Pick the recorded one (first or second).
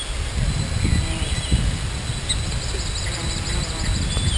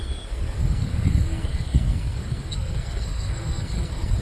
first